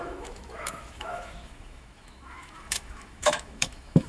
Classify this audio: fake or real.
fake